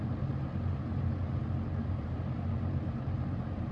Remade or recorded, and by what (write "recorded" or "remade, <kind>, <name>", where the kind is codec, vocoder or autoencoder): recorded